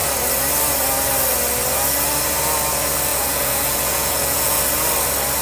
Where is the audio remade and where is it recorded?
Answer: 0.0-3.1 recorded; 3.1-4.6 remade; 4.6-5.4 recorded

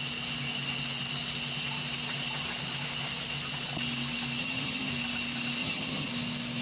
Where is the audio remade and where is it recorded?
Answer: 0.0-4.4 recorded; 4.4-4.9 remade; 4.9-5.6 recorded; 5.6-6.1 remade; 6.1-6.6 recorded

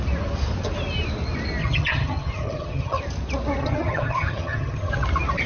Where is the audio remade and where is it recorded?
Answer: 0.0-1.6 recorded; 1.6-3.0 remade; 3.0-3.6 recorded; 3.6-4.9 remade; 4.9-5.5 recorded